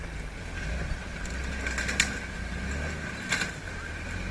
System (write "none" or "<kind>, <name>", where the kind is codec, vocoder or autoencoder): none